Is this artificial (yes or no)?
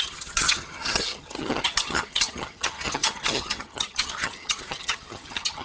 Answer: yes